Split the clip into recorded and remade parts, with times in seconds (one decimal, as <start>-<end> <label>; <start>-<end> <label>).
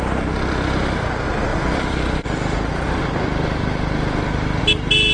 0.0-5.1 recorded